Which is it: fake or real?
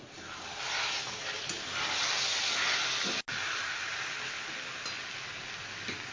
real